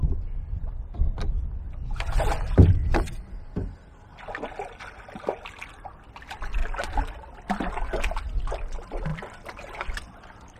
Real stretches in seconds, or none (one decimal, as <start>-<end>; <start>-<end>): 0.0-10.6